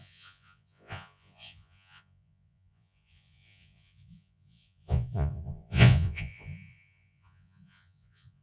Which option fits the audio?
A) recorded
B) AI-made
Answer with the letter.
B